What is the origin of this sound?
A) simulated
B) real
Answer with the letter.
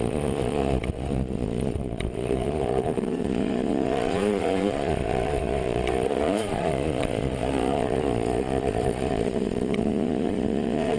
A